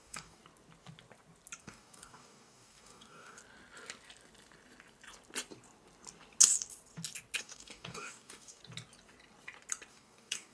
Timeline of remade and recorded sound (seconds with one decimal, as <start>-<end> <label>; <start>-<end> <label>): 0.0-0.4 remade; 0.4-1.6 recorded; 1.6-3.4 remade; 3.4-7.4 recorded; 7.4-8.6 remade; 8.6-9.9 recorded; 9.9-10.5 remade